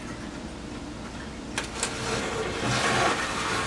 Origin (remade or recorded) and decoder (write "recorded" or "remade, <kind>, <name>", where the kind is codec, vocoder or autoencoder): recorded